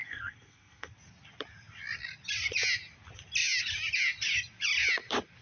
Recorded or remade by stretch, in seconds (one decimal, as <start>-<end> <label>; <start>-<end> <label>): 0.0-0.9 remade; 0.9-5.4 recorded